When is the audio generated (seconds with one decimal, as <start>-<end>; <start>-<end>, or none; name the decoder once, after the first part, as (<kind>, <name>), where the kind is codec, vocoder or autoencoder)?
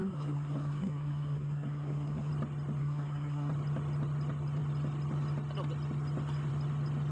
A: 0.0-2.3 (codec, SNAC); 2.8-3.5